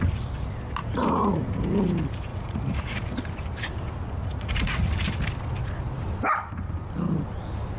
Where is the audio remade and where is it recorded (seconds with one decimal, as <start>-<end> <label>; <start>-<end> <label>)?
0.0-0.8 recorded; 0.8-1.6 remade; 1.6-2.3 recorded; 2.3-3.2 remade; 3.2-4.2 recorded; 4.2-4.9 remade; 4.9-7.8 recorded